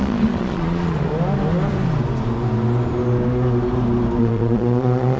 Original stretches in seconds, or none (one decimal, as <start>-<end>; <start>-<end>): 1.1-4.2